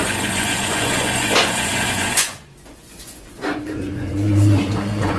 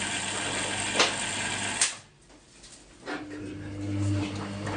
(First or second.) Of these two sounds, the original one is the second